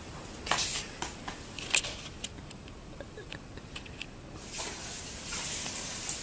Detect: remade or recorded recorded